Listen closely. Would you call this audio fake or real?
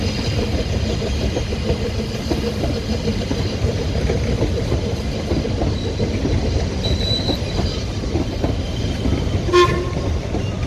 real